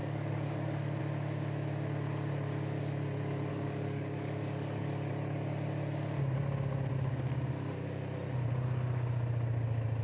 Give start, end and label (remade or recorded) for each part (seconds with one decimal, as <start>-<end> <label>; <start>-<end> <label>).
0.0-1.0 remade; 1.0-3.5 recorded; 3.5-5.1 remade; 5.1-10.0 recorded

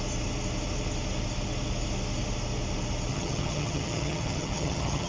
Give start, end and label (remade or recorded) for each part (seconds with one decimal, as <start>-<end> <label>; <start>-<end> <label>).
0.0-3.1 recorded; 3.1-5.1 remade

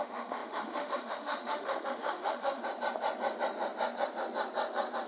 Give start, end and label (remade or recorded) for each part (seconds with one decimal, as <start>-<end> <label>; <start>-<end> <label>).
0.0-2.6 remade; 2.6-5.1 recorded

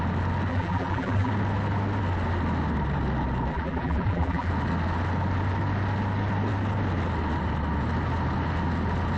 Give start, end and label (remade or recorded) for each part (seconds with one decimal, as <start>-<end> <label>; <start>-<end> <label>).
0.0-0.5 recorded; 0.5-1.3 remade; 1.3-3.5 recorded; 3.5-4.5 remade; 4.5-9.2 recorded

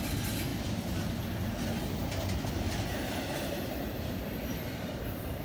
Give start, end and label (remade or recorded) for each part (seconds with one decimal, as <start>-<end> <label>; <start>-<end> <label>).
0.0-5.4 recorded

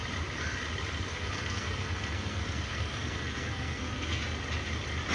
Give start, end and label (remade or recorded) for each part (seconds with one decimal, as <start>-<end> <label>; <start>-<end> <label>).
0.0-1.1 recorded; 1.1-4.2 remade; 4.2-5.1 recorded

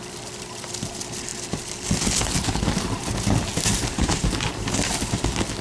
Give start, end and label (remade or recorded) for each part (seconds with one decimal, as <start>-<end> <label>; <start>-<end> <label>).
0.0-5.6 recorded